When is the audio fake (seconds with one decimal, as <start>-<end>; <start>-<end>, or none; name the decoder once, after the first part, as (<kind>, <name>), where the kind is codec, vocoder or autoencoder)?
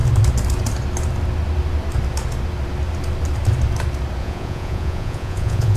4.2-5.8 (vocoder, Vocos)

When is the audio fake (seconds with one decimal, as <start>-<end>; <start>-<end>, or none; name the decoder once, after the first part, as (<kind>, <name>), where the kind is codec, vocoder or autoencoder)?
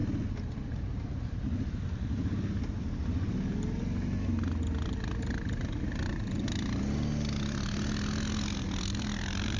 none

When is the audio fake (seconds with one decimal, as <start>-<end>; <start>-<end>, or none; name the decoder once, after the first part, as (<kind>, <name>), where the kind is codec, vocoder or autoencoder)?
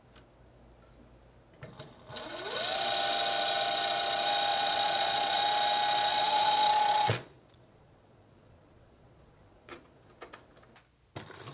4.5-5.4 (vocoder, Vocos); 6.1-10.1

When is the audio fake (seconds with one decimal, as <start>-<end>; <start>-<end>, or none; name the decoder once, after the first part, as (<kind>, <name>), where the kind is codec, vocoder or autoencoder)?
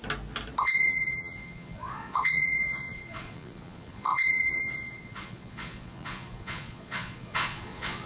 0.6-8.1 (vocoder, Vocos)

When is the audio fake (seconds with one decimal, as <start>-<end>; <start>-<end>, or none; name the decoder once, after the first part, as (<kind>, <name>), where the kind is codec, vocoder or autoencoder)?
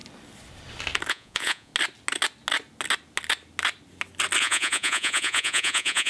1.1-1.7 (vocoder, Vocos); 4.4-6.1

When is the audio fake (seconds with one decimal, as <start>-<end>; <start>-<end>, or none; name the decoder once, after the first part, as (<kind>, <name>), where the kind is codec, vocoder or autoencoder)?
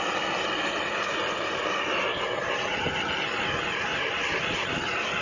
none